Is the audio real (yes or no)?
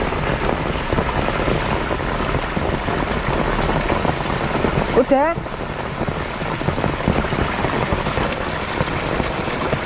yes